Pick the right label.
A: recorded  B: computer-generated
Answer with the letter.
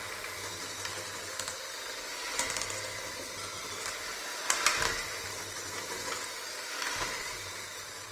A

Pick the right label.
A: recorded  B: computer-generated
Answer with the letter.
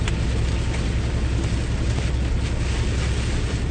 A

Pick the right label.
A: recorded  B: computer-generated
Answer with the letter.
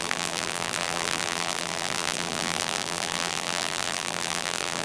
B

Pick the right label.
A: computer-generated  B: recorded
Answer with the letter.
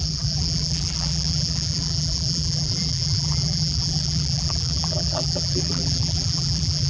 A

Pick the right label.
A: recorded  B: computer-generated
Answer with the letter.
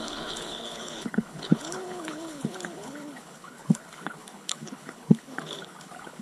B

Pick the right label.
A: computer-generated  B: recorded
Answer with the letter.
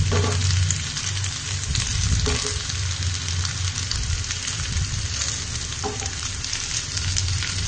B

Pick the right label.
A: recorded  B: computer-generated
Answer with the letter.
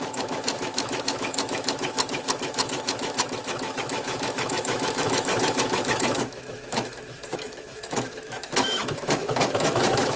B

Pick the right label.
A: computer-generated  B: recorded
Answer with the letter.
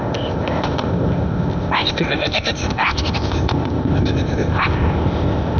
A